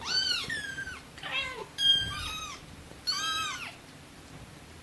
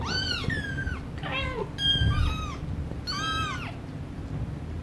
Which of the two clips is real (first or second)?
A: second